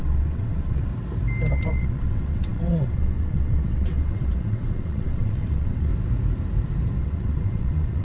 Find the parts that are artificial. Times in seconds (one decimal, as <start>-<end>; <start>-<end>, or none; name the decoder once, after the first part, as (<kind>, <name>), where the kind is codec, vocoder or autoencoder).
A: 0.0-0.9 (vocoder, WaveNeXt); 1.5-5.9; 7.0-8.0